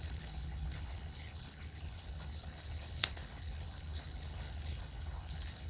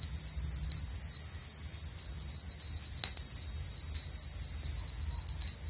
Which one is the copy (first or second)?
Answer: first